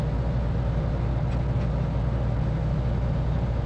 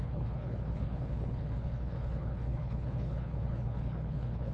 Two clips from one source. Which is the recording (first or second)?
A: first